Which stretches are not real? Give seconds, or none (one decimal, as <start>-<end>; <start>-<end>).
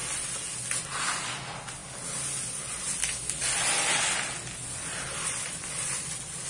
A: none